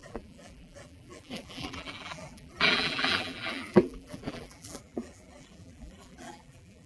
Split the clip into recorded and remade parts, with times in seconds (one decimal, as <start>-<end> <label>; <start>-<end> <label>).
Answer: 0.0-6.9 remade